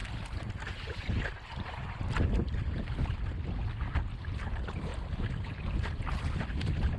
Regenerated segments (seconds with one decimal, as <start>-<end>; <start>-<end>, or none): none